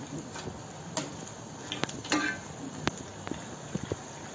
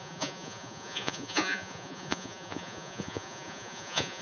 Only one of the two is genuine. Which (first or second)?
first